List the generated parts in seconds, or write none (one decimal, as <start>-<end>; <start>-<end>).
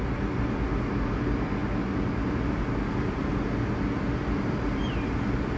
none